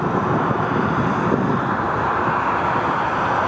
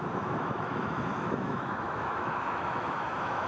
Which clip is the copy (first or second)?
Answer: second